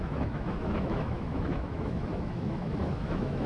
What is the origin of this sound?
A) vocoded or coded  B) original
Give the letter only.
A